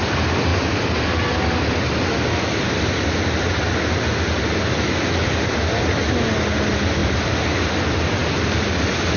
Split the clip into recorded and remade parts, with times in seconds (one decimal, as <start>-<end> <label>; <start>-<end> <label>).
0.0-9.2 recorded